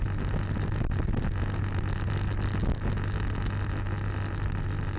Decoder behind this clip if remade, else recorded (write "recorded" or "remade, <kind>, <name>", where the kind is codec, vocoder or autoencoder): recorded